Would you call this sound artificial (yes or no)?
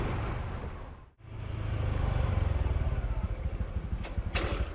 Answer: no